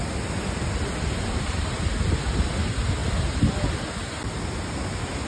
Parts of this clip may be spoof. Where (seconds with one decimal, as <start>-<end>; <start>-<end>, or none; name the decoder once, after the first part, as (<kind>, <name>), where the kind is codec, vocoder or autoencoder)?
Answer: none